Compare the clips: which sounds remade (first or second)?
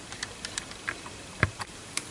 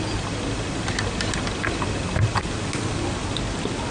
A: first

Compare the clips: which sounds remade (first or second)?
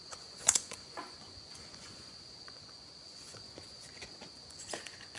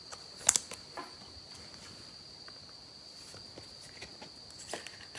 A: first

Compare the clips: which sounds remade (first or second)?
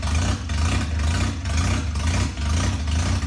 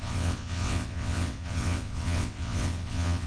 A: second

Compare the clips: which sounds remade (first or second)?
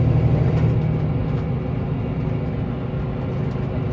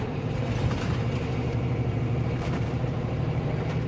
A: second